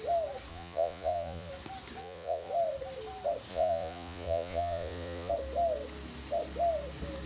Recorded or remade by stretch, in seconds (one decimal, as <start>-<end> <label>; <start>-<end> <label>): 0.0-0.5 recorded; 0.5-1.5 remade; 1.5-2.0 recorded; 2.0-2.5 remade; 2.5-3.5 recorded; 3.5-5.3 remade; 5.3-7.3 recorded